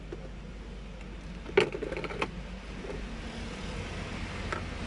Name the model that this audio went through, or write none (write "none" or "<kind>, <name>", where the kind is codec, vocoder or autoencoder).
none